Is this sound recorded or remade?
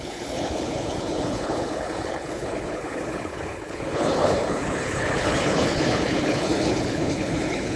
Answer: remade